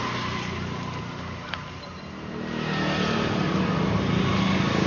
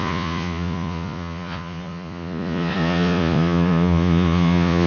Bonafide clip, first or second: first